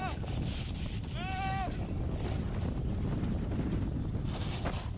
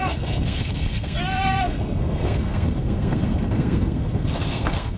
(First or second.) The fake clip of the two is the second